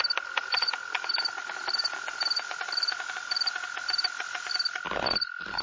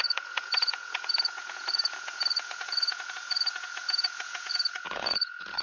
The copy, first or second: second